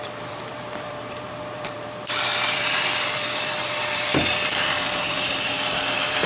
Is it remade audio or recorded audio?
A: remade